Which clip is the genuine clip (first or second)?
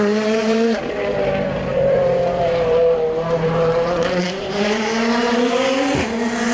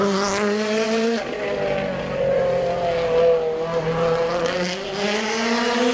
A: second